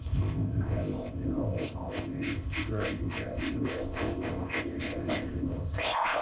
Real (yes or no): no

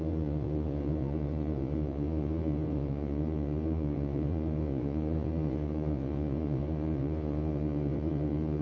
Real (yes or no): no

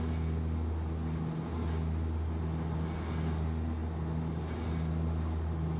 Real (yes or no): yes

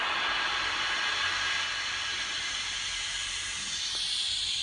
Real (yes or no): yes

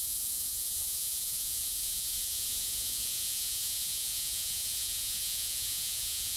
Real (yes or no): no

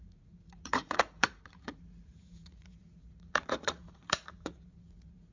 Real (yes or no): no